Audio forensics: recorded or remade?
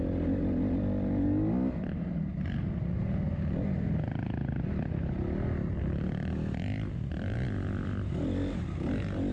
recorded